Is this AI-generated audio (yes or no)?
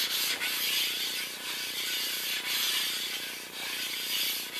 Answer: no